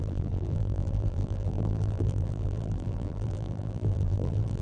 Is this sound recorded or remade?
remade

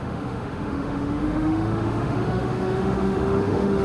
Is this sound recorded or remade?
remade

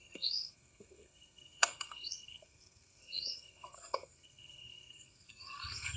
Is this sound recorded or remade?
remade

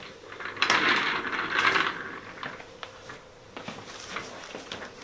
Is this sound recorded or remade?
recorded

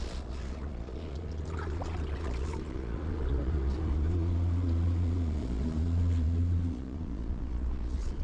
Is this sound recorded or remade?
remade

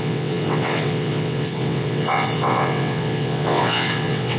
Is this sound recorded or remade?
remade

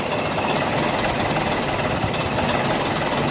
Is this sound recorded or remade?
recorded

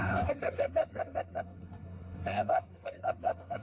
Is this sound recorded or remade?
remade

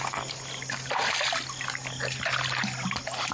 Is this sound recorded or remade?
recorded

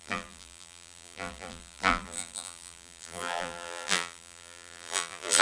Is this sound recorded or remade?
remade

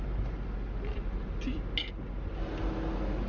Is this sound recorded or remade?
recorded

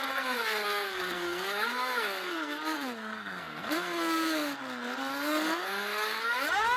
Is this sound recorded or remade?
remade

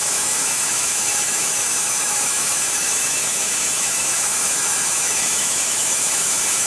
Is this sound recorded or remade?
remade